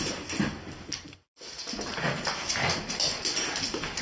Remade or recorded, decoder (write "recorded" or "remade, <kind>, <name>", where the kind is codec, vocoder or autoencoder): recorded